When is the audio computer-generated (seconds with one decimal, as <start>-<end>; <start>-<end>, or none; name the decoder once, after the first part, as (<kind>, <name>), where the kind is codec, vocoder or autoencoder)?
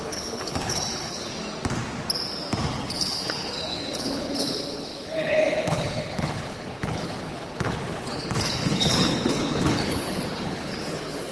0.0-1.3 (codec, HILCodec); 2.7-11.3